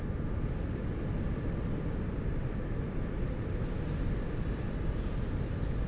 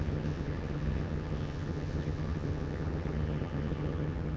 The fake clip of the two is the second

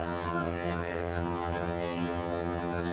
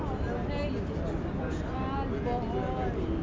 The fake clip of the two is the first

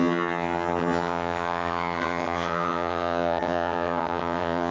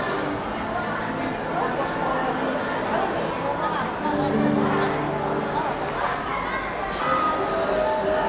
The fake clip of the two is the first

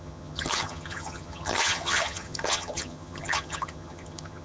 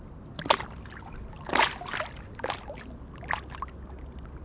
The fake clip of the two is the first